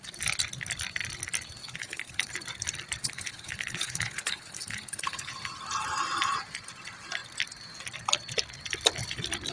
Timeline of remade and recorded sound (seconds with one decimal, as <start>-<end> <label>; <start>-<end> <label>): 0.0-1.6 recorded; 1.6-2.3 remade; 2.3-3.0 recorded; 3.0-5.3 remade; 5.3-9.5 recorded